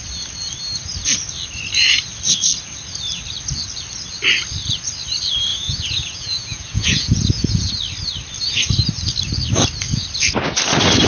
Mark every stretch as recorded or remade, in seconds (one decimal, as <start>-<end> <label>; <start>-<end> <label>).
0.0-5.5 recorded; 5.5-7.7 remade; 7.7-11.1 recorded